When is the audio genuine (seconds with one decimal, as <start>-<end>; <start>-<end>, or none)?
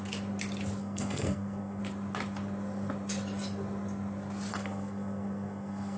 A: 0.0-0.8; 1.8-4.5